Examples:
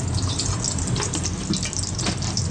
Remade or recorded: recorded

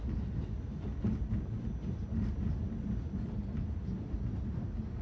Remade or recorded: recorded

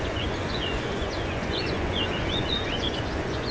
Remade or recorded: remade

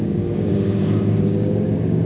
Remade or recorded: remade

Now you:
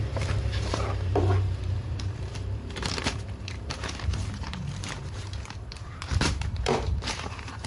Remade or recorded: remade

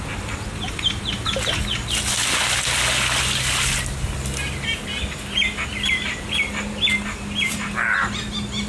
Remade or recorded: recorded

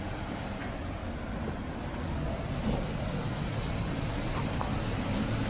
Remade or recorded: recorded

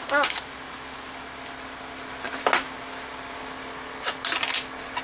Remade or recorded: recorded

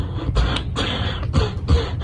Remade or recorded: recorded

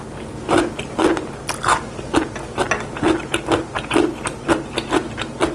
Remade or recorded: recorded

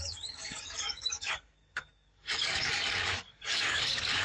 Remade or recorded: remade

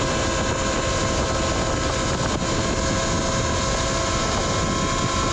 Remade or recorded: recorded